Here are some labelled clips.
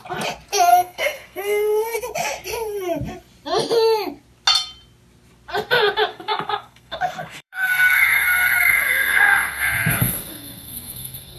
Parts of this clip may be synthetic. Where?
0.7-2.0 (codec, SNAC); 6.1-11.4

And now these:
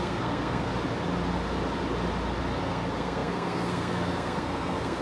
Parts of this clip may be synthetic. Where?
0.0-0.7 (codec, SNAC); 2.6-5.0

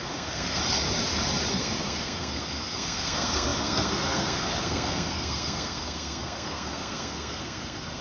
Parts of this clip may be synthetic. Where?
0.0-0.6 (codec, SNAC); 1.5-8.0

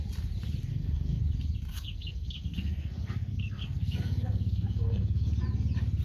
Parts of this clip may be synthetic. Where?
0.7-1.2 (codec, SNAC); 1.7-5.3